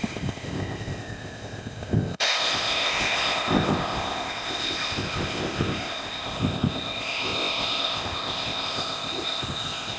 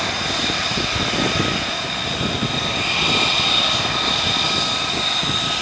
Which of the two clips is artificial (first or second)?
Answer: first